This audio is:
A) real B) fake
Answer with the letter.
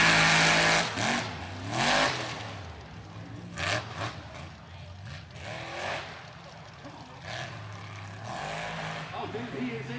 A